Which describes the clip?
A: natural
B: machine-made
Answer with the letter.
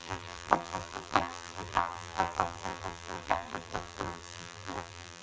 B